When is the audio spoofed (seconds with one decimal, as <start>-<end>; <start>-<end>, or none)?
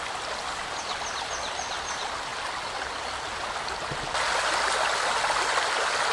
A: none